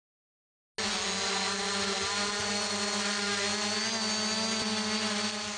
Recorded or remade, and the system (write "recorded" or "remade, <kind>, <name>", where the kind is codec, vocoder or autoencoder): recorded